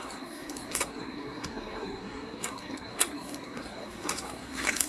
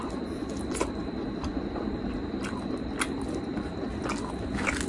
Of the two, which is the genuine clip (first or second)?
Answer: second